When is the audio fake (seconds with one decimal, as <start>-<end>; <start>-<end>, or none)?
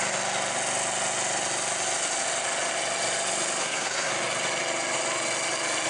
3.6-4.1